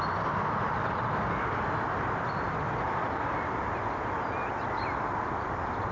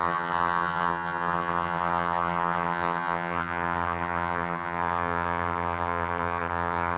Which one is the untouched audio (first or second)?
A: first